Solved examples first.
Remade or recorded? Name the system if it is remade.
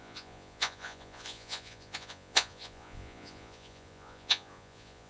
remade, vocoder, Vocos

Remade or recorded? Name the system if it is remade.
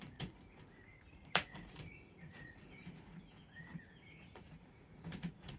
remade, vocoder, Vocos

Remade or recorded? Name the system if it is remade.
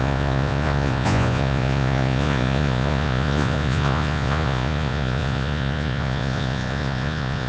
remade, vocoder, Vocos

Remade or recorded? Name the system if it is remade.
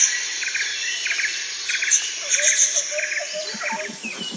recorded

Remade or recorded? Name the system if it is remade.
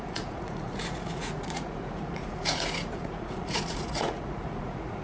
remade, vocoder, Vocos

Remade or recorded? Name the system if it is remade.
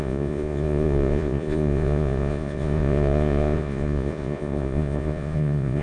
remade, vocoder, Vocos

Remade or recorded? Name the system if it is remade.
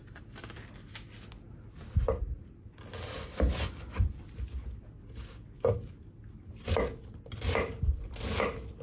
recorded